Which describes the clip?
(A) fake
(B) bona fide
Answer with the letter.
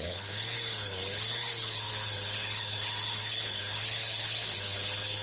A